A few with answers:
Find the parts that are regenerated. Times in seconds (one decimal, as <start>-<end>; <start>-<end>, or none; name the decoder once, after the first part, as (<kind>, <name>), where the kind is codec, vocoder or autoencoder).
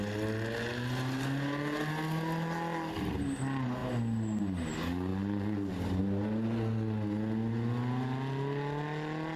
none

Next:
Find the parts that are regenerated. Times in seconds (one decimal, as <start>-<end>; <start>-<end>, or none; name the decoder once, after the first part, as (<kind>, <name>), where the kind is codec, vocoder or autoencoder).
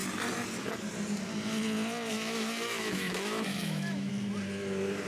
2.1-4.1 (autoencoder, DAC-VAE)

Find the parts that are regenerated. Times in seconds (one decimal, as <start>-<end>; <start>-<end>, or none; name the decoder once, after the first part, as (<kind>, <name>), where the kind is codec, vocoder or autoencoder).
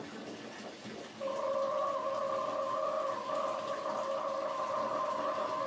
none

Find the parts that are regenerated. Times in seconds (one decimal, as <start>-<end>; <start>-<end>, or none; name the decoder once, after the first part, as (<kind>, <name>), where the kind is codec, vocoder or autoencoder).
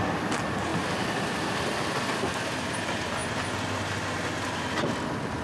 none